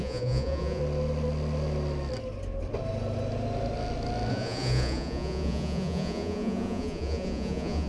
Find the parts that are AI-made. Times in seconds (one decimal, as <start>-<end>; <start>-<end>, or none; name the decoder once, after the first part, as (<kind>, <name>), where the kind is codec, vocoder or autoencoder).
0.0-0.8 (vocoder, Vocos); 4.3-7.9